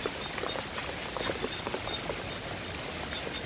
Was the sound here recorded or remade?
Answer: recorded